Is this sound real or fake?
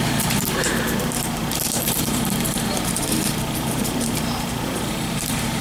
fake